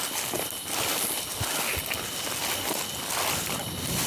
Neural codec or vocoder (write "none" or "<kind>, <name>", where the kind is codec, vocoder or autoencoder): none